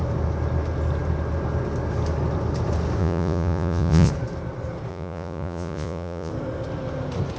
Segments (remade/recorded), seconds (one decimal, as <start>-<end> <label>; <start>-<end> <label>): 0.0-3.0 recorded; 3.0-4.1 remade; 4.1-4.9 recorded; 4.9-6.3 remade; 6.3-7.4 recorded